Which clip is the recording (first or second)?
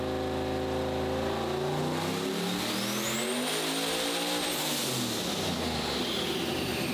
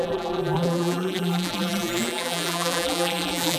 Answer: first